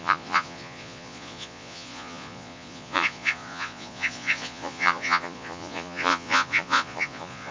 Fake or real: fake